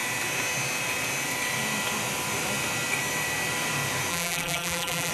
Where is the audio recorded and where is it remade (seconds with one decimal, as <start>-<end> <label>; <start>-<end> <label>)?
0.0-4.1 recorded; 4.1-5.1 remade